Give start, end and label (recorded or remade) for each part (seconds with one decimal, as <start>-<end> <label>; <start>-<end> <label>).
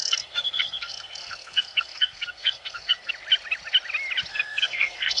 0.0-3.1 remade; 3.1-4.3 recorded; 4.3-5.2 remade